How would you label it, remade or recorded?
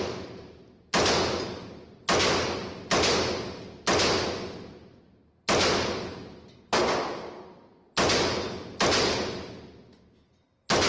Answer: recorded